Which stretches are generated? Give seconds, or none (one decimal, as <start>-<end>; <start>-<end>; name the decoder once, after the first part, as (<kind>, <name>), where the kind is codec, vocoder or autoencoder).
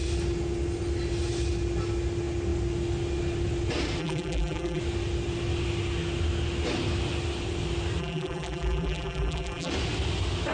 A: 4.0-4.8 (vocoder, BigVGAN v2); 8.0-9.7